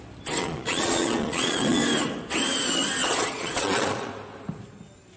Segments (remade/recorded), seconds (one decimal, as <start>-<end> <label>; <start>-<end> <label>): 0.0-0.4 recorded; 0.4-1.8 remade; 1.8-3.0 recorded; 3.0-4.1 remade; 4.1-5.2 recorded